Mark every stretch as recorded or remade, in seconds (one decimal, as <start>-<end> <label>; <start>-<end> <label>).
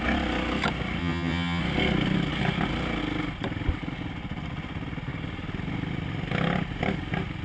0.0-1.0 recorded; 1.0-1.6 remade; 1.6-7.4 recorded